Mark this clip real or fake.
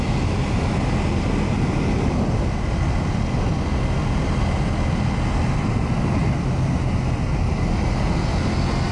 real